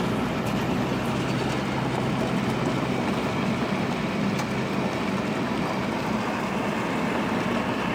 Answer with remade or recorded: recorded